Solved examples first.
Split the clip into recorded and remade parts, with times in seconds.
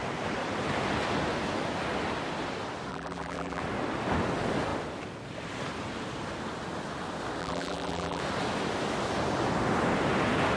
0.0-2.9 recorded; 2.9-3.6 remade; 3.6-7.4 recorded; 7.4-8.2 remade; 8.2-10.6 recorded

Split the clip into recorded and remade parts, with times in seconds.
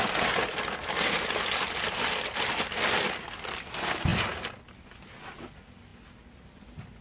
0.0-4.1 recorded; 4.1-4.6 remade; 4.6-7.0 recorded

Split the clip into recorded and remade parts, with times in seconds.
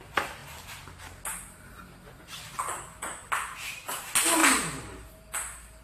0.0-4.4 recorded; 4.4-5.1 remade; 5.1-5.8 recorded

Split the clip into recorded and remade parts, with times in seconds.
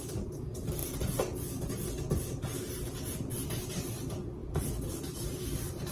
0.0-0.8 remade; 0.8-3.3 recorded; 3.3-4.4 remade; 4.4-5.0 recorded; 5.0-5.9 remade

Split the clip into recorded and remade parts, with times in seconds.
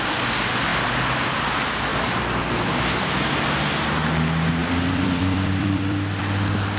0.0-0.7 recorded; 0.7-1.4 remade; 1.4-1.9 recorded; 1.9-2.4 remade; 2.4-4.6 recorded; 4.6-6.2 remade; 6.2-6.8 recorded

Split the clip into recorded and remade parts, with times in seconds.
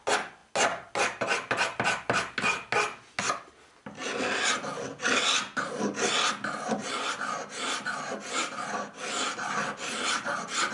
0.0-10.7 recorded